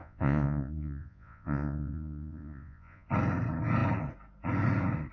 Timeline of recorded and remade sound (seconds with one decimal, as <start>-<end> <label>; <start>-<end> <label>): 0.0-3.1 remade; 3.1-5.1 recorded